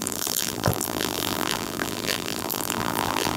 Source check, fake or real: fake